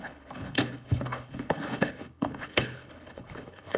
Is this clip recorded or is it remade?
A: remade